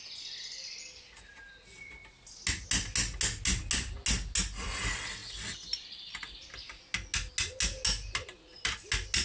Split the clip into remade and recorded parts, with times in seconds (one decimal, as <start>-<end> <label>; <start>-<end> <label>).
0.0-9.2 recorded